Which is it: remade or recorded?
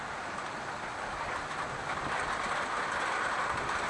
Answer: recorded